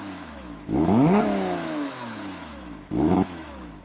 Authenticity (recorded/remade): remade